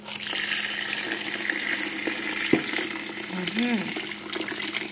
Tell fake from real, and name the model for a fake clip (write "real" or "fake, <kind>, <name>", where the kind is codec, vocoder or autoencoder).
real